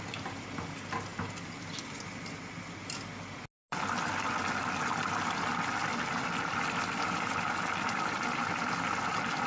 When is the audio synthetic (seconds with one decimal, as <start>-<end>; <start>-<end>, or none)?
none

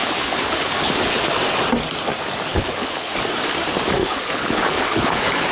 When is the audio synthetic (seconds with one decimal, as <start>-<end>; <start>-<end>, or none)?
0.0-1.2; 2.5-3.1; 4.0-5.5

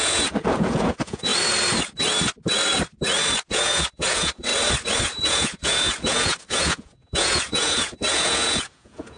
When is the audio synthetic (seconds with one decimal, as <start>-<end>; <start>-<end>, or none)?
0.0-1.3; 3.5-4.5; 5.0-9.2

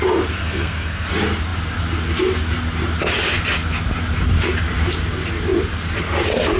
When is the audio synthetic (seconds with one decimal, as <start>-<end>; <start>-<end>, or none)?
0.4-1.1

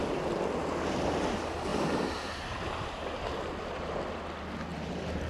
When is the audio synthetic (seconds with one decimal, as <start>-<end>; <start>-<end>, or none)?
1.7-3.5

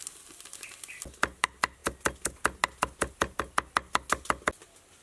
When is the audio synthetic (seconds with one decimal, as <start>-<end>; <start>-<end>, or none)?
none

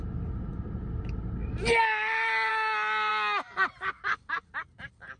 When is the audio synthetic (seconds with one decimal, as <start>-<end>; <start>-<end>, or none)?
none

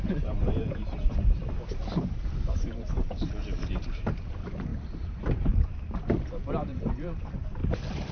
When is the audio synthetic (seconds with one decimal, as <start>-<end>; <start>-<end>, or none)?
0.0-1.4; 1.9-8.1